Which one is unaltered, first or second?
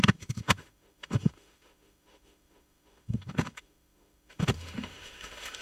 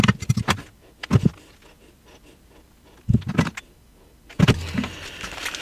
second